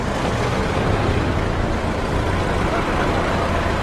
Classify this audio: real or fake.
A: fake